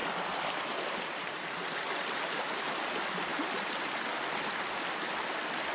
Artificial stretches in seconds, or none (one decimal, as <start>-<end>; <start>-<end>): none